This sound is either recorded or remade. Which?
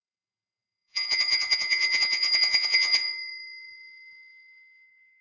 remade